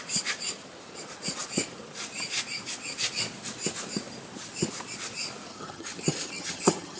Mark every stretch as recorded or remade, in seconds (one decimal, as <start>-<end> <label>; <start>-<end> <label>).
0.0-5.5 recorded; 5.5-7.0 remade